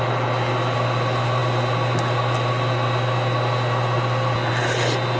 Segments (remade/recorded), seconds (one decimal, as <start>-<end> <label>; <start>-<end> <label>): 0.0-5.2 recorded